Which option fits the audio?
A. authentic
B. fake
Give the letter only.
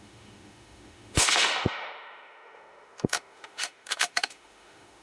B